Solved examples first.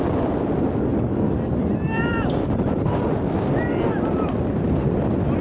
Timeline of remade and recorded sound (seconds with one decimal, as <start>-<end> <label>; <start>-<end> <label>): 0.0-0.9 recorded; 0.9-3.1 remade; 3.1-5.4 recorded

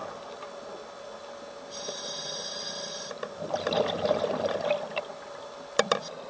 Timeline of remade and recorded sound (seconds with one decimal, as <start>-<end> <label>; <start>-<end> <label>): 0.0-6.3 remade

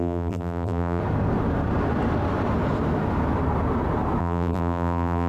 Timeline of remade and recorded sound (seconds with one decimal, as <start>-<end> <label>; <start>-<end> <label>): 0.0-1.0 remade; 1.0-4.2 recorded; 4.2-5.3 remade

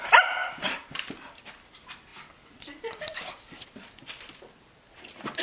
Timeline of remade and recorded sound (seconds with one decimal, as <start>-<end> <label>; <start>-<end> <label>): 0.0-0.4 recorded; 0.4-1.0 remade; 1.0-2.1 recorded; 2.1-3.7 remade; 3.7-5.4 recorded